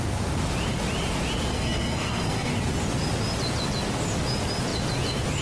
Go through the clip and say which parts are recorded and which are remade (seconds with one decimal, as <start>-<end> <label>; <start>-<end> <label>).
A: 0.0-1.5 recorded; 1.5-2.5 remade; 2.5-5.4 recorded